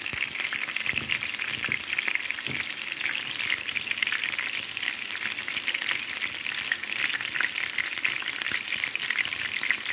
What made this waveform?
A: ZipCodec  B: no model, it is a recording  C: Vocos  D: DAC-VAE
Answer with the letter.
B